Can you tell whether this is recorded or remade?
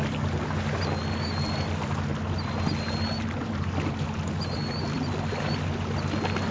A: recorded